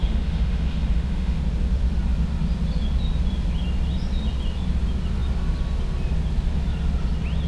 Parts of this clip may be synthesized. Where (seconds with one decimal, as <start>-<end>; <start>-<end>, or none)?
0.0-1.4